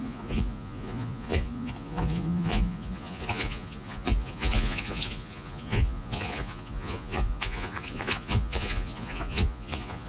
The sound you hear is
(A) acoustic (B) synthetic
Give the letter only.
B